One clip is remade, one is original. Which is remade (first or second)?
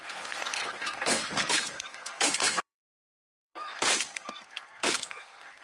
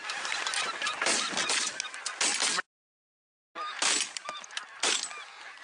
first